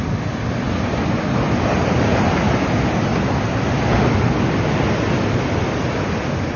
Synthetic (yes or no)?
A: no